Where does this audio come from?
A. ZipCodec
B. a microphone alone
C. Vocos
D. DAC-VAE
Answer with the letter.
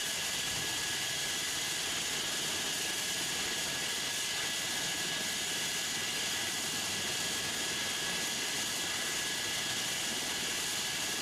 B